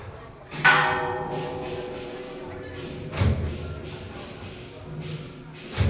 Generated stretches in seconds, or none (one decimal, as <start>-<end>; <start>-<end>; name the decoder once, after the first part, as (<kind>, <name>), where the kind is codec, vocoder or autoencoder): 0.0-3.5 (vocoder, BigVGAN v2)